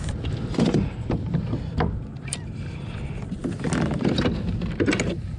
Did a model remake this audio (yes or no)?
no